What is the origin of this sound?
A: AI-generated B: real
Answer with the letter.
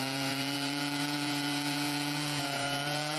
A